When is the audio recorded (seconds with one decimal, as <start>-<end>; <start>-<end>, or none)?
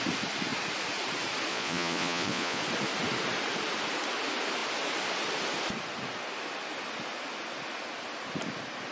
0.0-1.5; 2.6-8.9